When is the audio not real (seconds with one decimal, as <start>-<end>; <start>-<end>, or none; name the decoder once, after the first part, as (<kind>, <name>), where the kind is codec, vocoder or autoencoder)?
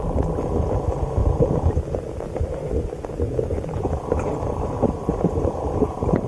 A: 3.5-4.3 (vocoder, BigVGAN v2); 5.1-6.3